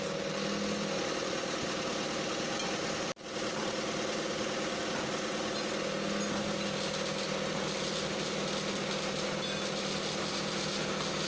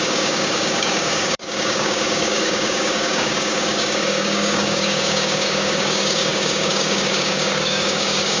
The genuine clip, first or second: first